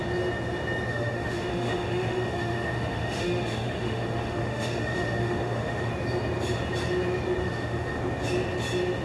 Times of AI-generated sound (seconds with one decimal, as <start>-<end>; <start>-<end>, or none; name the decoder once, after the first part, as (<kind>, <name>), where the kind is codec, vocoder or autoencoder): 0.9-5.9 (autoencoder, DAC-VAE); 7.4-8.0